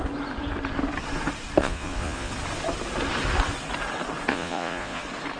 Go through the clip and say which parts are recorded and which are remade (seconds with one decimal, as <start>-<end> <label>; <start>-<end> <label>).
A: 0.0-1.6 recorded; 1.6-2.3 remade; 2.3-4.3 recorded; 4.3-5.0 remade; 5.0-5.4 recorded